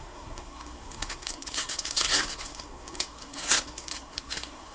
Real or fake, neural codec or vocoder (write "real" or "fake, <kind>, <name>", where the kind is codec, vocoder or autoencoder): fake, codec, SNAC